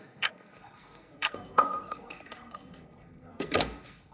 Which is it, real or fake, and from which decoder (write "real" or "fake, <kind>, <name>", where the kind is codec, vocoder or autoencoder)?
fake, codec, SNAC